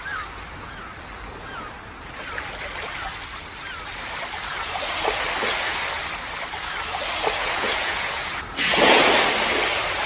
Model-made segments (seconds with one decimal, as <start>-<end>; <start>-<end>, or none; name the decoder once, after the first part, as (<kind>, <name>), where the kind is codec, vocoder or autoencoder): 7.4-9.1 (vocoder, Vocos)